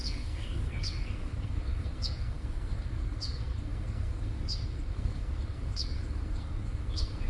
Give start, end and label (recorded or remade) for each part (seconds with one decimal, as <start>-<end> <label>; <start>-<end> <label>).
0.0-7.3 remade